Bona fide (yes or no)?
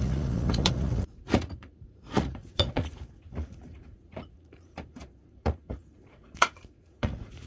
no